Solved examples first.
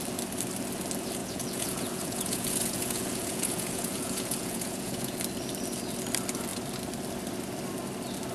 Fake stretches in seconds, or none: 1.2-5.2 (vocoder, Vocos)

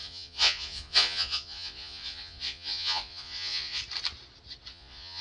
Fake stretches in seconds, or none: 0.0-3.8 (vocoder, Vocos); 4.7-5.2

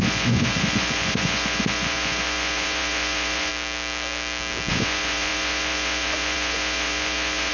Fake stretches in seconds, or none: 0.0-3.5 (vocoder, Vocos); 4.7-7.5

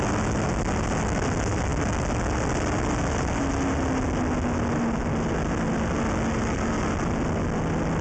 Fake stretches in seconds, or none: none

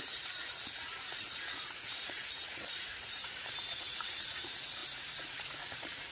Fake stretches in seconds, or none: 0.0-6.1 (vocoder, Vocos)

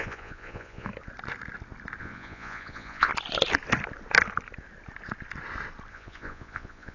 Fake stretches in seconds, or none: 0.0-0.9 (vocoder, Vocos); 2.0-3.1; 5.9-6.9

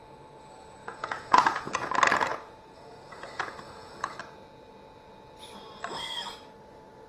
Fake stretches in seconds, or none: 0.8-1.9 (vocoder, Vocos); 2.3-4.2

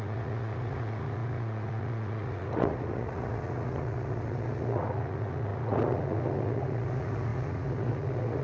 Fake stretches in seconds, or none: 0.0-8.4 (vocoder, Vocos)